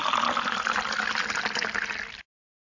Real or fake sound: real